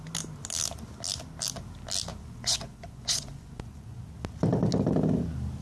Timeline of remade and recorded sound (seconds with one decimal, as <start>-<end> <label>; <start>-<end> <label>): 0.0-2.1 recorded; 2.1-4.1 remade; 4.1-5.6 recorded